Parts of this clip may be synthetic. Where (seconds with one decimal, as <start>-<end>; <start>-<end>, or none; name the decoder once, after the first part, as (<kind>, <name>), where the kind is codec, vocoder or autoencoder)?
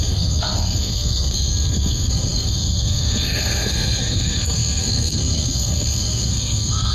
0.0-6.9 (codec, SNAC)